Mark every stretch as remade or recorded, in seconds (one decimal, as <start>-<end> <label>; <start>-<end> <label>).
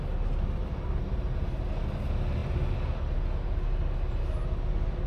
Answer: 0.0-5.1 recorded